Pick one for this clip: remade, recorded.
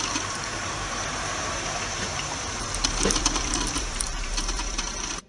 remade